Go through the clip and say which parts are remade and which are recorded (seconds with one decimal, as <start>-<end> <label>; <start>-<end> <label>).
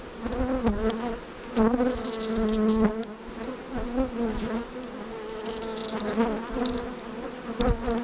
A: 0.0-8.0 recorded